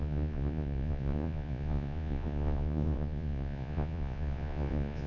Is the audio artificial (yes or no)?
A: yes